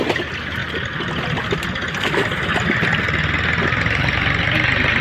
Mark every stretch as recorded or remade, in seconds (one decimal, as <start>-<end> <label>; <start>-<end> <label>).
0.0-5.0 recorded